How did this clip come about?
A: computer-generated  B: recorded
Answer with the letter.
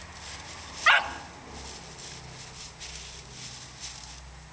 B